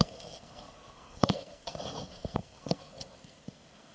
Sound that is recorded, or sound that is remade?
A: remade